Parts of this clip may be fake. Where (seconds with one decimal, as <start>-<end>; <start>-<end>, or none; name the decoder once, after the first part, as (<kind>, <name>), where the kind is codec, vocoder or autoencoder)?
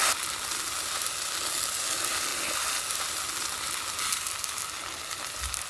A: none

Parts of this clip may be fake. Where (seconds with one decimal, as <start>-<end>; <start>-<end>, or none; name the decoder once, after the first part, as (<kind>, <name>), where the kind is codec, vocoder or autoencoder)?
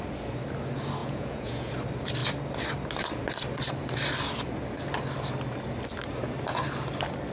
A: 1.0-1.7 (vocoder, Vocos)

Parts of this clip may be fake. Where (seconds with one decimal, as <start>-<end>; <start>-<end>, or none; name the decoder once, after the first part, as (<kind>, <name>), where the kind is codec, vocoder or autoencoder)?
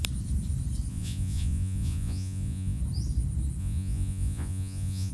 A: 0.9-2.8 (vocoder, Vocos); 3.6-5.1